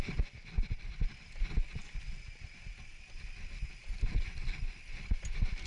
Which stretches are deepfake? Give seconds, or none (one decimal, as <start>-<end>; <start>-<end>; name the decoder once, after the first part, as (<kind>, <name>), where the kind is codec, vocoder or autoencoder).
none